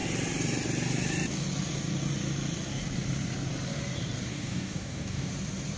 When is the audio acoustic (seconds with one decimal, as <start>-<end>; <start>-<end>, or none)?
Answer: 0.0-4.3; 5.3-5.8